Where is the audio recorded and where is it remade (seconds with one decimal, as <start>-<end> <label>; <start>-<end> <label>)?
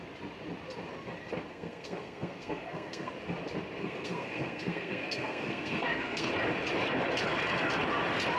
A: 0.0-1.5 recorded; 1.5-3.1 remade; 3.1-3.8 recorded; 3.8-6.3 remade; 6.3-8.4 recorded